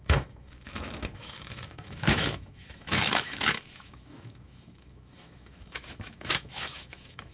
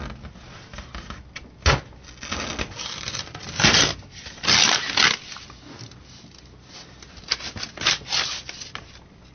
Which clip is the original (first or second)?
second